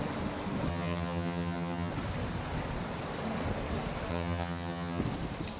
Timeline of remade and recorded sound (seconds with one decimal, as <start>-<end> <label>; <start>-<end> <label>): 0.0-0.7 recorded; 0.7-1.9 remade; 1.9-4.1 recorded; 4.1-5.0 remade; 5.0-5.6 recorded